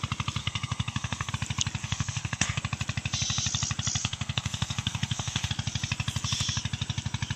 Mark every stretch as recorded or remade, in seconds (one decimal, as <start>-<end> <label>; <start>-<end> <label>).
0.0-0.4 recorded; 0.4-1.3 remade; 1.3-1.8 recorded; 1.8-2.6 remade; 2.6-4.0 recorded; 4.0-5.5 remade; 5.5-7.4 recorded